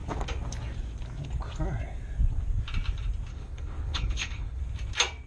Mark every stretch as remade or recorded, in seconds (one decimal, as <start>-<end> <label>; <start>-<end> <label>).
0.0-3.3 recorded; 3.3-4.6 remade; 4.6-5.3 recorded